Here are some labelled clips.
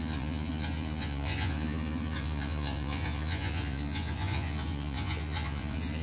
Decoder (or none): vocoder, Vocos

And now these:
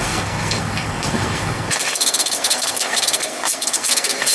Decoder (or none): codec, SNAC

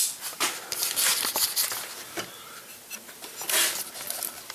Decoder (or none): none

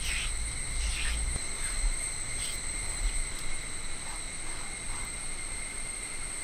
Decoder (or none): none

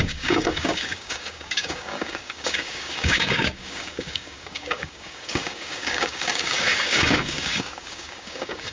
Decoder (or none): codec, DAC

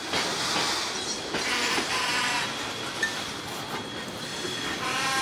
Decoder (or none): none